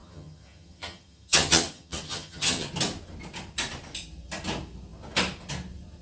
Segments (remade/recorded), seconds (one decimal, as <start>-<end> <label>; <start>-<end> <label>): 0.0-2.7 remade; 2.7-6.0 recorded